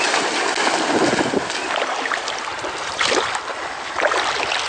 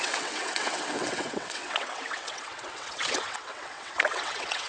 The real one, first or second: first